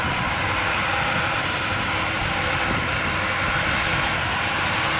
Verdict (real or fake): real